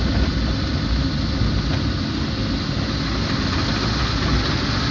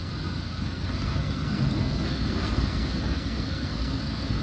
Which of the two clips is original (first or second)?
first